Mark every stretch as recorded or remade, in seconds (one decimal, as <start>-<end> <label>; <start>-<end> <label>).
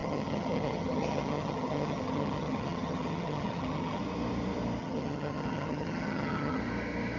0.0-4.0 remade; 4.0-4.8 recorded; 4.8-6.6 remade; 6.6-7.2 recorded